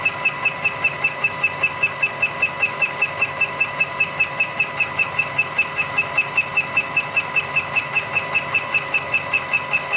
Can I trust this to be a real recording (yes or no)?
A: yes